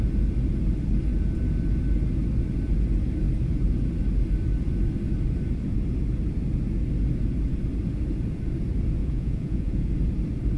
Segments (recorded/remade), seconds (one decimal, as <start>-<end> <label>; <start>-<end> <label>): 0.0-9.0 recorded; 9.0-9.9 remade; 9.9-10.6 recorded